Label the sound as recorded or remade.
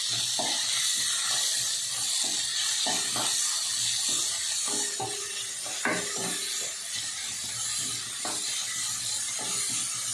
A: recorded